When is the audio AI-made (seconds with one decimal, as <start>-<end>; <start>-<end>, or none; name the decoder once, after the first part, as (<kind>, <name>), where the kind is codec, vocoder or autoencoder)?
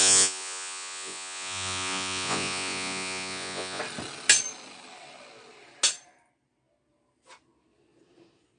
0.0-3.8 (vocoder, Vocos)